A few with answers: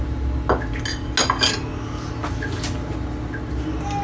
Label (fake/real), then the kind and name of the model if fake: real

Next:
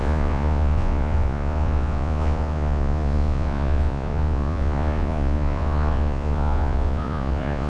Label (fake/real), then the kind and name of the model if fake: fake, vocoder, Vocos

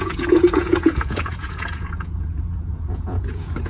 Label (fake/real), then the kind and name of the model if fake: fake, vocoder, Vocos